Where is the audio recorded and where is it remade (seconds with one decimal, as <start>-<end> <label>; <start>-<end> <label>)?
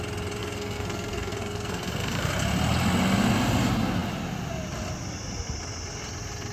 0.0-0.4 recorded; 0.4-2.3 remade; 2.3-6.5 recorded